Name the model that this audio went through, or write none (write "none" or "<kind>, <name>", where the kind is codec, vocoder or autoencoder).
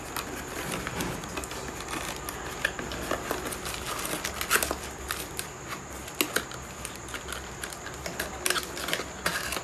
none